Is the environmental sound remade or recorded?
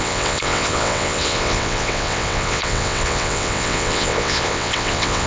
remade